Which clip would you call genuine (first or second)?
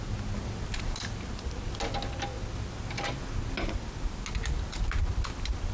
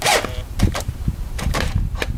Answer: first